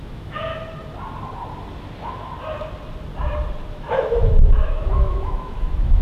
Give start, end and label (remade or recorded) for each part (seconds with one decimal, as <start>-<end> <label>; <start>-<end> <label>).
0.0-0.5 remade; 0.5-3.7 recorded; 3.7-6.0 remade